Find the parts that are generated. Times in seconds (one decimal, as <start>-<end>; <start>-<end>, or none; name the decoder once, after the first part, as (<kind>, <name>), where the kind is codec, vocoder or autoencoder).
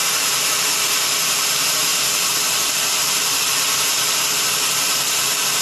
0.0-5.6 (vocoder, BigVGAN v2)